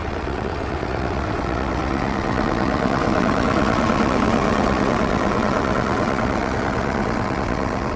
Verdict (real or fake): fake